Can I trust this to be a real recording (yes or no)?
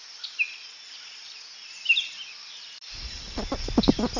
yes